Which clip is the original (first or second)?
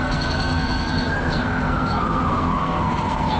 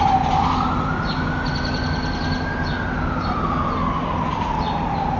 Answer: second